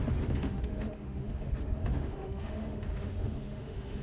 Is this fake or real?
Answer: fake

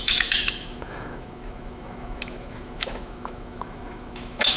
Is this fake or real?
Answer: fake